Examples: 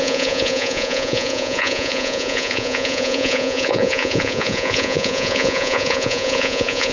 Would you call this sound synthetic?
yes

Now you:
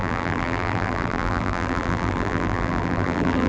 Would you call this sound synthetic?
yes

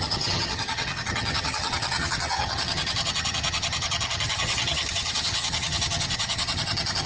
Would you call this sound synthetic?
yes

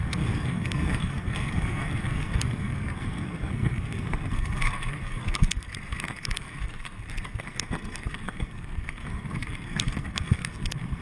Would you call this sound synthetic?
yes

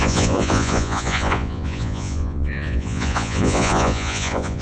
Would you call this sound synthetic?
yes